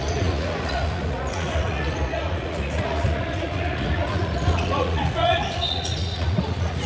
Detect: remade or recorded remade